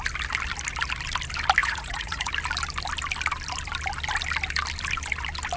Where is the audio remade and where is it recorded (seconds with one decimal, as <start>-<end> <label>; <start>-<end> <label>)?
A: 0.0-1.6 recorded; 1.6-2.3 remade; 2.3-5.6 recorded